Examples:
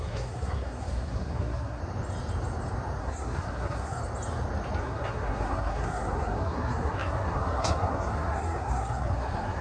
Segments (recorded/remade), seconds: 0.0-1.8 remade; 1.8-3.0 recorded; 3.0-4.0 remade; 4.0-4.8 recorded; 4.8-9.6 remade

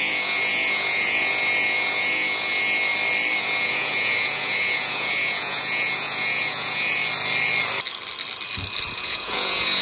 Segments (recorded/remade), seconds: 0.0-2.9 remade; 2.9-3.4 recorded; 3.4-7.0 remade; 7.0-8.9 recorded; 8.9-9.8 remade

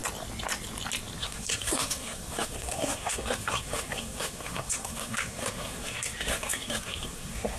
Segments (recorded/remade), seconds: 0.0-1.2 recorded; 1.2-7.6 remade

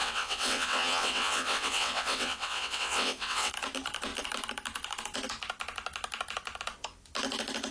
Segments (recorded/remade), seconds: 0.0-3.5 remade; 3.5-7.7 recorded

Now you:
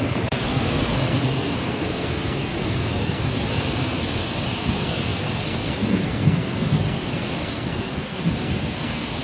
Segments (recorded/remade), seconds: 0.0-9.2 remade

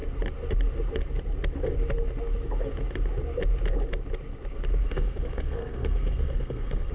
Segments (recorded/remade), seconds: 0.0-4.8 recorded; 4.8-6.9 remade